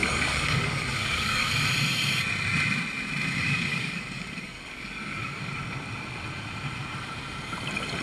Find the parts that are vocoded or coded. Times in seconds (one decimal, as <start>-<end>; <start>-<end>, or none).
0.0-1.5; 3.7-5.5